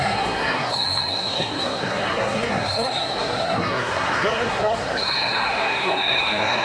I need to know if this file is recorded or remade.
remade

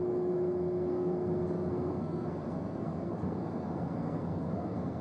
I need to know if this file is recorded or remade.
remade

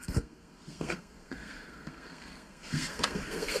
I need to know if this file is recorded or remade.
remade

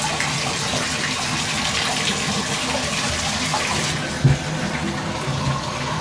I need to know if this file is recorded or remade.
recorded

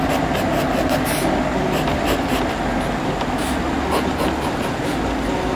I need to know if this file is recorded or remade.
recorded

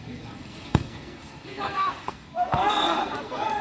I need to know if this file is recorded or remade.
remade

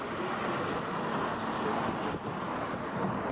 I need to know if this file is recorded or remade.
recorded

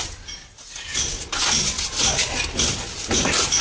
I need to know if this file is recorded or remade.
recorded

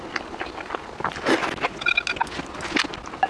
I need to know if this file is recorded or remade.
recorded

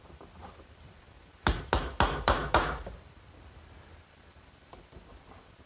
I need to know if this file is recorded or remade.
recorded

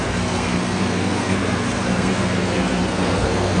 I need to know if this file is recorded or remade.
remade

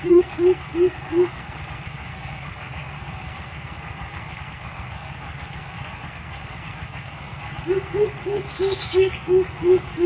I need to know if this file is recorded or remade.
remade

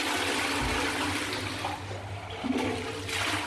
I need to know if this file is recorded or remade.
recorded